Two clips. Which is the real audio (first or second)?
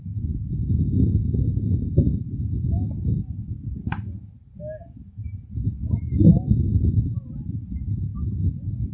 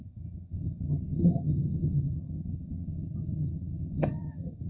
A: first